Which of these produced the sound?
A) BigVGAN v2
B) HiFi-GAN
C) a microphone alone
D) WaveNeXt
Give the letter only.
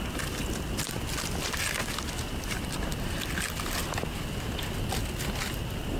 C